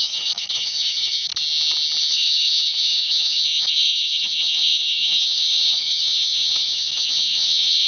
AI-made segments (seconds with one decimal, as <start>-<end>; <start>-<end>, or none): 0.0-1.3; 2.0-7.9

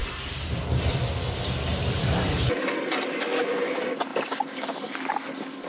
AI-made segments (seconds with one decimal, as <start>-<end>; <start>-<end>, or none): 0.0-0.9; 1.7-2.5

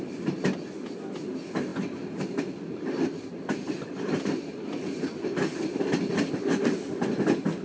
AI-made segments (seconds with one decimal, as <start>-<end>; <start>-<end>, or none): none

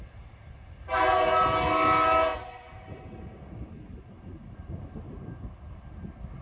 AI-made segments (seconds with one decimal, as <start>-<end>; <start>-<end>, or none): none

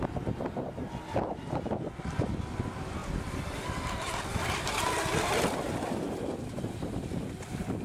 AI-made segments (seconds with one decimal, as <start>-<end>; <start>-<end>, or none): none

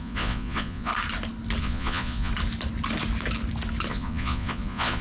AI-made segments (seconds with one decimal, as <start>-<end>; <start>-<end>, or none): 0.0-0.9; 1.6-2.3; 3.9-5.0